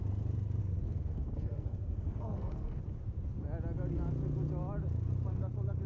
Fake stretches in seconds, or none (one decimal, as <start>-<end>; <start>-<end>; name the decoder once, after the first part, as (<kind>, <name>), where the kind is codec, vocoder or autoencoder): 0.6-2.8 (codec, SNAC)